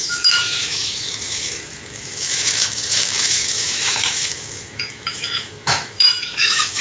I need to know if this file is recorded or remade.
remade